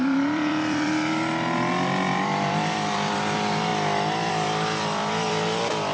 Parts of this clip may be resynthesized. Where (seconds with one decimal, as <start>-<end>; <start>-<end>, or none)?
0.0-3.7; 4.3-5.9